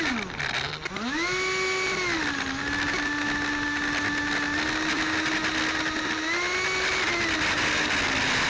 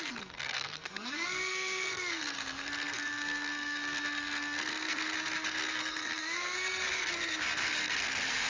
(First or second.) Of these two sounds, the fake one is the second